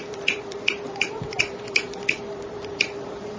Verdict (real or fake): fake